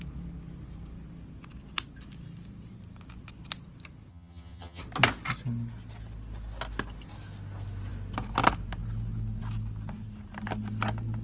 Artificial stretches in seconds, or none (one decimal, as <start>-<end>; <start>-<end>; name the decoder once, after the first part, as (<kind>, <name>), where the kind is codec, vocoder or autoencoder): 4.1-4.8 (vocoder, HiFi-GAN)